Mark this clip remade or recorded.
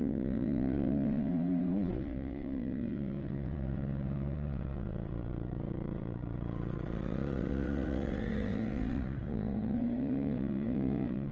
remade